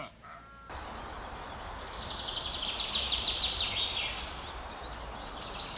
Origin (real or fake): real